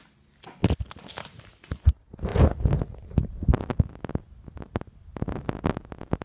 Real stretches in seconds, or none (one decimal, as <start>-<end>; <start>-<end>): 0.0-6.2